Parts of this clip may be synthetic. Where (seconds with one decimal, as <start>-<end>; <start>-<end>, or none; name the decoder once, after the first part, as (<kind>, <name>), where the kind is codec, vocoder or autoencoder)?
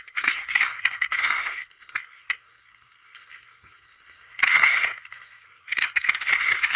0.0-6.8 (codec, SNAC)